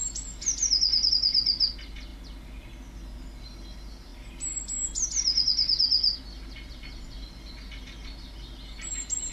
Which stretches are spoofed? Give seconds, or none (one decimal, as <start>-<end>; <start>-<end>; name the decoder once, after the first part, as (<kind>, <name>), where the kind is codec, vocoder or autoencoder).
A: none